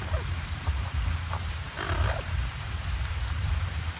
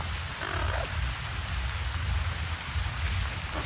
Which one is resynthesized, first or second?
first